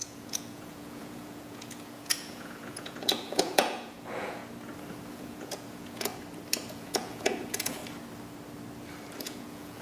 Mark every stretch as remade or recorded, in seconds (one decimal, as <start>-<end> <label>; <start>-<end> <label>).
0.0-4.4 remade; 4.4-5.1 recorded; 5.1-6.1 remade; 6.1-6.7 recorded; 6.7-7.8 remade; 7.8-9.2 recorded; 9.2-9.8 remade